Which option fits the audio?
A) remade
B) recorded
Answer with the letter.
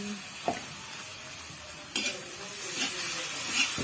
B